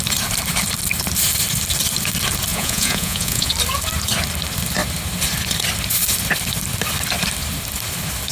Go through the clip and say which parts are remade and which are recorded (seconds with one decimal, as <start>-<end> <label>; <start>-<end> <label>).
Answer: 0.0-2.5 recorded; 2.5-3.5 remade; 3.5-8.3 recorded